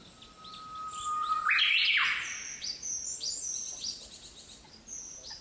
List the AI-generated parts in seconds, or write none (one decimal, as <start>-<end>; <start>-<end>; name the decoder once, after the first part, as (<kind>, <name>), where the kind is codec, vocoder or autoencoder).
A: none